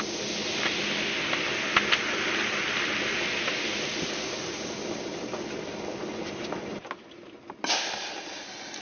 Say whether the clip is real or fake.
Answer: real